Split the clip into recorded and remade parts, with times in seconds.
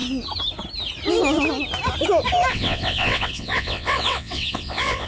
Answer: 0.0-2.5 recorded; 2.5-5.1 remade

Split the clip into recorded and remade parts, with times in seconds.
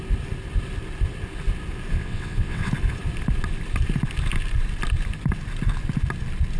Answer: 0.0-1.9 recorded; 1.9-2.7 remade; 2.7-6.6 recorded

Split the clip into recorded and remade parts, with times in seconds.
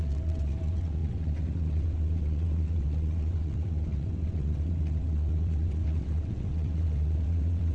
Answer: 0.0-7.7 remade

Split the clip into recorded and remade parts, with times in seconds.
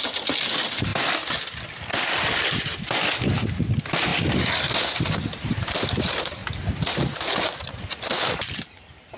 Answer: 0.0-9.2 recorded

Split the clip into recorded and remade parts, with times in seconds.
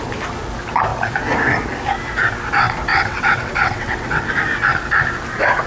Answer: 0.0-2.9 recorded; 2.9-4.3 remade; 4.3-5.7 recorded